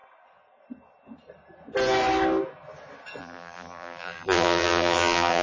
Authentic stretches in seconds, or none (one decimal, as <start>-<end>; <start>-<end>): 0.0-3.2